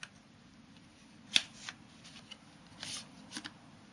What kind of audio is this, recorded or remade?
recorded